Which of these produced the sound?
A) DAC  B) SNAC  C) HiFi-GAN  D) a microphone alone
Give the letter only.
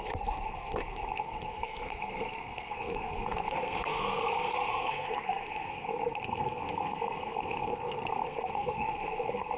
B